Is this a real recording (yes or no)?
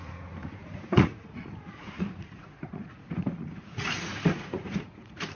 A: no